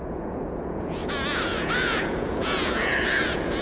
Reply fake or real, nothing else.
fake